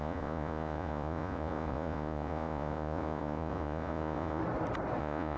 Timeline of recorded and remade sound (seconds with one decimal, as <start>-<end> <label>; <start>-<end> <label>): 0.0-4.4 remade; 4.4-5.0 recorded; 5.0-5.4 remade